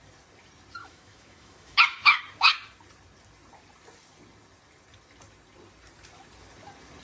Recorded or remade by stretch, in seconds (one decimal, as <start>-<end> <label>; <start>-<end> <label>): 0.0-0.8 recorded; 0.8-2.2 remade; 2.2-7.0 recorded